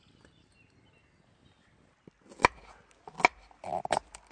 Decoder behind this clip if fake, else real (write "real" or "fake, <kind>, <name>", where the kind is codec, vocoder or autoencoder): real